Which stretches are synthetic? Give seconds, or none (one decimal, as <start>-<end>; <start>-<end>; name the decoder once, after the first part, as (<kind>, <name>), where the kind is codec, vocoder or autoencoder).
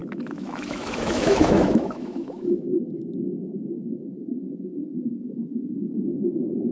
0.0-4.0 (autoencoder, DAC-VAE)